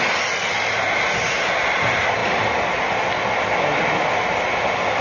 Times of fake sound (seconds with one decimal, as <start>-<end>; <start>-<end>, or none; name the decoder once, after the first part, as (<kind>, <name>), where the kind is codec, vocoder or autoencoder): none